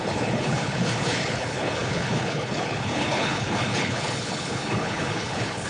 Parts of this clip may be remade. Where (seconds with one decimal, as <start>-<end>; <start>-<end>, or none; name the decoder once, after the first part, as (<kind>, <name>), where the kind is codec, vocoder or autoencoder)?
0.0-5.7 (codec, HILCodec)